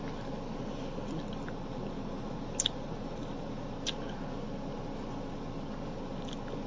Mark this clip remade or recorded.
recorded